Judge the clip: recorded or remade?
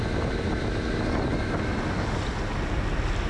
recorded